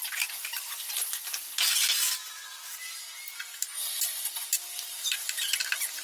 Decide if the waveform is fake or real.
real